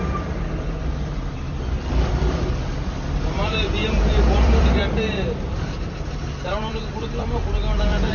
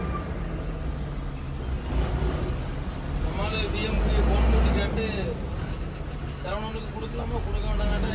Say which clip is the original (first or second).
second